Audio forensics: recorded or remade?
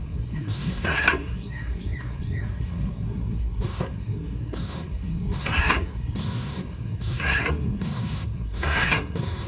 remade